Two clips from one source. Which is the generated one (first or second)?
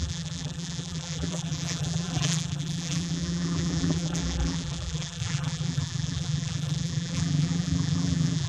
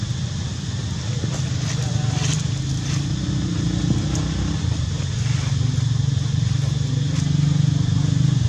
first